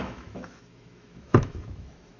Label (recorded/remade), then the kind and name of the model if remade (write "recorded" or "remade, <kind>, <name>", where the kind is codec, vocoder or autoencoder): remade, autoencoder, DAC-VAE